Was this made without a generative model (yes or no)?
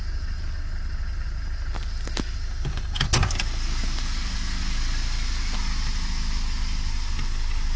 yes